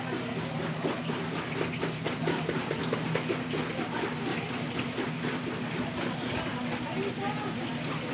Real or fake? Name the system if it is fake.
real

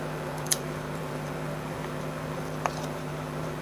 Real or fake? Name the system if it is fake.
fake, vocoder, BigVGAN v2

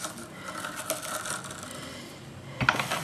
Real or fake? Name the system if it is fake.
fake, vocoder, BigVGAN v2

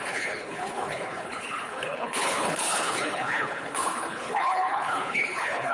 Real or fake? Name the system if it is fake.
fake, codec, HILCodec